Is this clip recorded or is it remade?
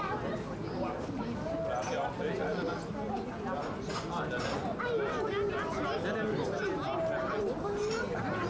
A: recorded